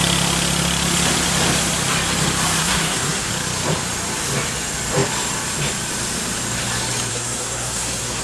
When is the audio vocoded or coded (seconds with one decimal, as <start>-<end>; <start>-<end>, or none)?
2.6-3.3; 7.1-8.2